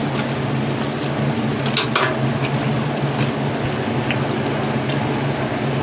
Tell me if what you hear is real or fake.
real